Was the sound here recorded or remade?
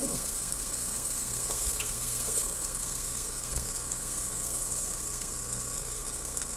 remade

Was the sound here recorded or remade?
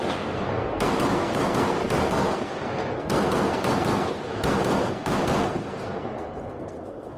remade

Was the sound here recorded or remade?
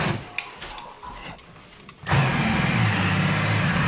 recorded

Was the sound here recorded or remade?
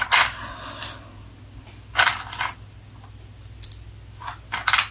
recorded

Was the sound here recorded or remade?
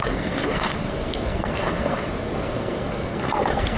remade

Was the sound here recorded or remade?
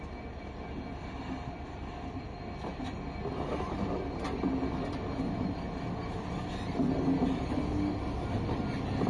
recorded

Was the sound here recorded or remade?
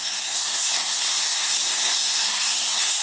remade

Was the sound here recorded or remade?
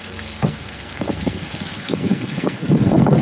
remade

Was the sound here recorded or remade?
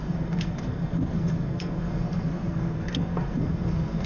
remade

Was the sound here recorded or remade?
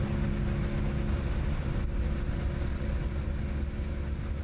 recorded